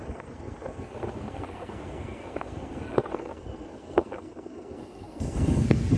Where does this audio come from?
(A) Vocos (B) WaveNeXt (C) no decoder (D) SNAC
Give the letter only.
D